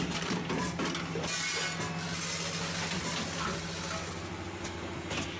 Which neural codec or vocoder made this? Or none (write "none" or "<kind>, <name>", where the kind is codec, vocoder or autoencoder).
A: none